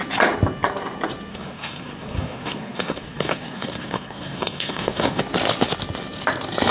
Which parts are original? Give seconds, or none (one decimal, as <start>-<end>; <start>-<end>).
0.0-1.3; 5.2-6.7